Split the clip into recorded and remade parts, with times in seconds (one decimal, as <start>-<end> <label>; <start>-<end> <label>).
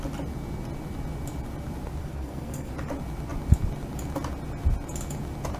0.0-2.0 recorded; 2.0-2.7 remade; 2.7-5.6 recorded